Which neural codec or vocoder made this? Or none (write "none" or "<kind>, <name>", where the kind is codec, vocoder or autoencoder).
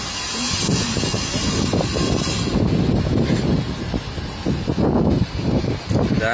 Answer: none